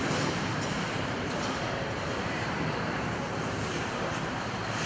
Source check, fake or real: fake